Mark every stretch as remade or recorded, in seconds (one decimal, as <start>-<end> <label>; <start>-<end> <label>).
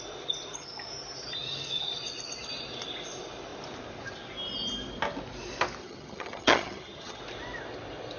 0.0-5.8 recorded; 5.8-7.2 remade; 7.2-8.2 recorded